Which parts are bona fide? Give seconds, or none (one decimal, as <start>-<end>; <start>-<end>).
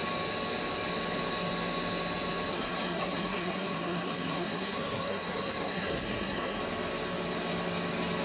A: 0.0-2.5; 6.6-8.2